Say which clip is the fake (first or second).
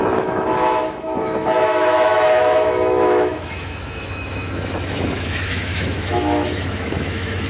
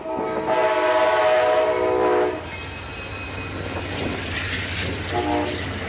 first